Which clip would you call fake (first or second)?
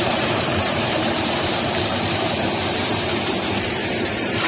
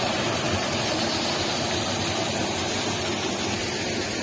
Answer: first